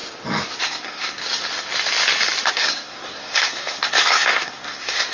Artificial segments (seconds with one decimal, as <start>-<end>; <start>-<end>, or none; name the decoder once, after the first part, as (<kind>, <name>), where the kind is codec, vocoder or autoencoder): 0.6-1.2 (codec, SNAC); 2.5-5.1